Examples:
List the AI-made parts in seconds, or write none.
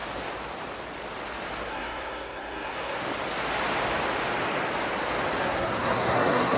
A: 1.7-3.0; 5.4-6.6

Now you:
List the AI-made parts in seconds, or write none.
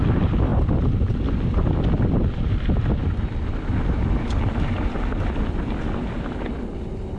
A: none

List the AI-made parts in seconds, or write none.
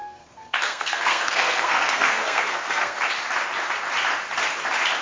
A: 0.0-3.0